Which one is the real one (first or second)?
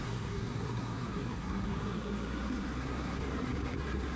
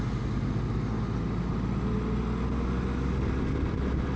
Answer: second